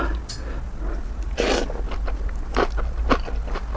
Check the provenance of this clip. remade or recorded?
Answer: recorded